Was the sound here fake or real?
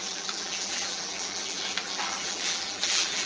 fake